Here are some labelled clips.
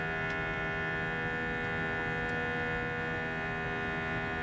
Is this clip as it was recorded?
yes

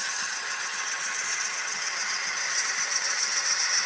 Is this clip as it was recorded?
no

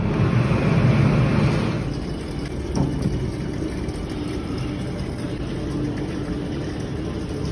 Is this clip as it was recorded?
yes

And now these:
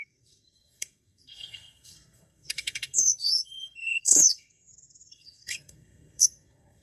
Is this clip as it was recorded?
no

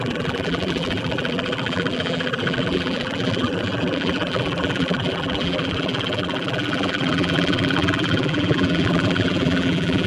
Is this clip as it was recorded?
no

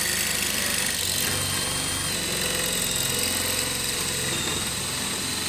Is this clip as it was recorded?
yes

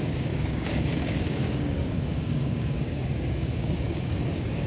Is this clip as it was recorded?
no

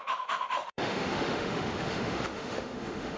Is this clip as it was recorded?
no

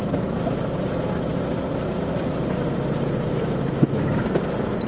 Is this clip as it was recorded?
yes